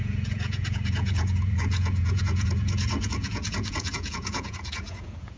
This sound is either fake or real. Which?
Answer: fake